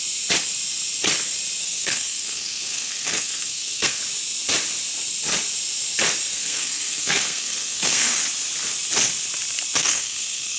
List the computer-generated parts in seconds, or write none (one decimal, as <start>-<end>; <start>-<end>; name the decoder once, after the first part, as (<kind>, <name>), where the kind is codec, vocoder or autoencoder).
1.6-4.0 (codec, SNAC); 6.3-8.2; 9.8-10.6